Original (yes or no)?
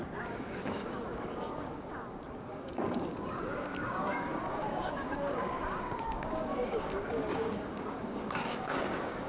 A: no